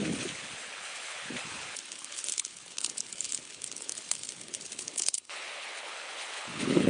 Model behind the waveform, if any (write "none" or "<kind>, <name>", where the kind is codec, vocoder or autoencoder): codec, HILCodec